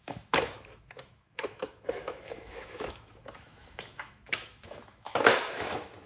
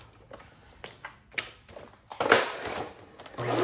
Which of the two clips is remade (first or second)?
first